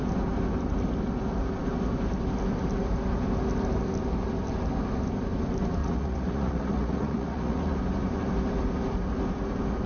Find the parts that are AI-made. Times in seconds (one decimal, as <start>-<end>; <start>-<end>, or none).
5.8-7.8